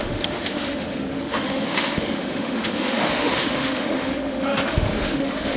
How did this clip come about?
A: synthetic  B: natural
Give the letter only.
A